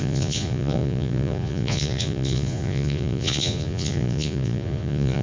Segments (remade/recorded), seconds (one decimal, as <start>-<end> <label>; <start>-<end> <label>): 0.0-5.2 remade